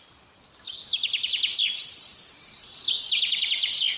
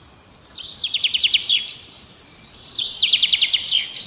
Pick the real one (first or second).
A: first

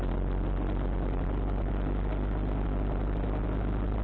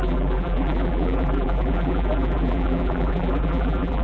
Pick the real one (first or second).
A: first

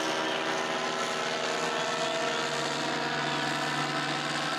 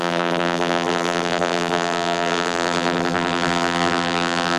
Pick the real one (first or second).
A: first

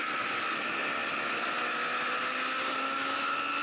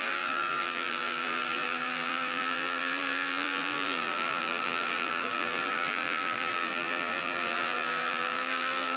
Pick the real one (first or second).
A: first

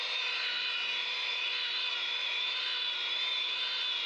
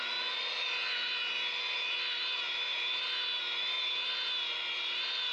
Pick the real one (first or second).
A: second